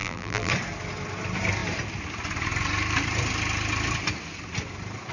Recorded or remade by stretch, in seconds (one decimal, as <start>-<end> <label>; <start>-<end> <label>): 0.0-0.5 remade; 0.5-5.1 recorded